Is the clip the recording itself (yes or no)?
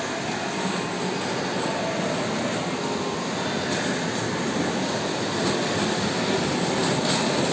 yes